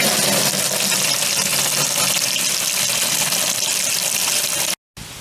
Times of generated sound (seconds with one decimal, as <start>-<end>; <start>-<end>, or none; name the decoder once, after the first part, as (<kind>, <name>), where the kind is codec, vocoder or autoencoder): none